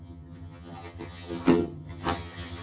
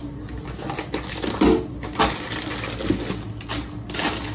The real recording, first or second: second